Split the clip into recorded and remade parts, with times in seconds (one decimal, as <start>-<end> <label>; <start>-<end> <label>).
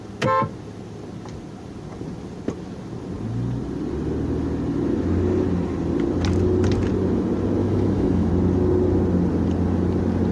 0.0-7.6 recorded; 7.6-8.3 remade; 8.3-10.3 recorded